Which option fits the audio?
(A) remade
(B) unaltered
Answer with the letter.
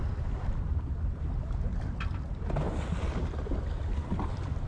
B